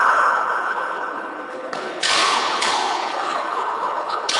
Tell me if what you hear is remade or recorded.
remade